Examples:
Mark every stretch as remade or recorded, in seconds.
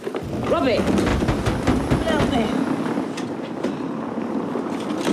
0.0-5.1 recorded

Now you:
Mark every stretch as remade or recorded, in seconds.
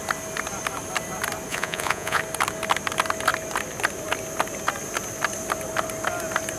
0.0-1.5 recorded; 1.5-2.2 remade; 2.2-6.6 recorded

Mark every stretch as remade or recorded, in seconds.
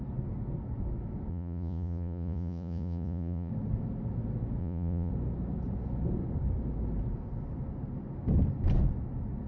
0.0-1.3 recorded; 1.3-3.5 remade; 3.5-4.6 recorded; 4.6-5.1 remade; 5.1-9.5 recorded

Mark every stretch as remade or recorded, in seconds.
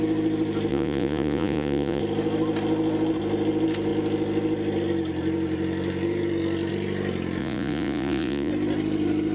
0.0-0.7 recorded; 0.7-2.0 remade; 2.0-7.4 recorded; 7.4-8.5 remade; 8.5-9.3 recorded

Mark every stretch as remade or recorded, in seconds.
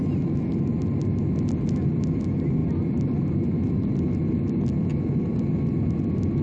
0.0-6.4 recorded